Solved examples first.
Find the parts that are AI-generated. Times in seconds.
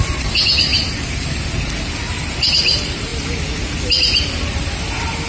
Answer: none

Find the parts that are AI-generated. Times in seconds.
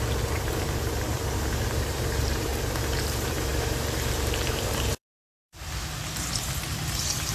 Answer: 0.0-2.5 (vocoder, BigVGAN v2); 3.0-7.3